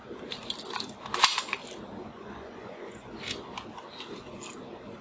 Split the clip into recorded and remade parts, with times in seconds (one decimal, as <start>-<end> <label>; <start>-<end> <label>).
0.0-2.0 recorded; 2.0-3.1 remade; 3.1-5.0 recorded